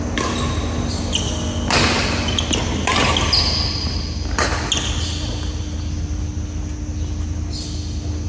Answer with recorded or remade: recorded